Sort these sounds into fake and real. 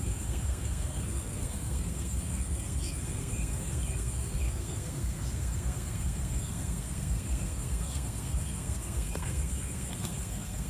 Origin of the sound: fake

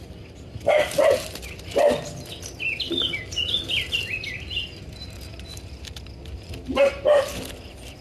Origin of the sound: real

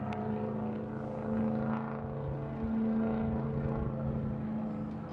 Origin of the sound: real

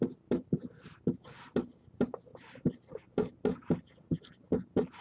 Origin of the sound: real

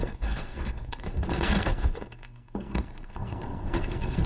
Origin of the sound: fake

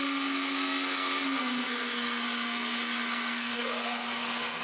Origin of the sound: fake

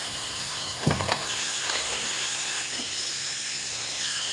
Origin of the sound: fake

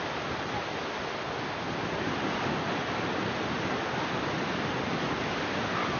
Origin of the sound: real